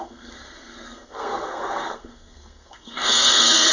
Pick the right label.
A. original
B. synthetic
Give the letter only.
B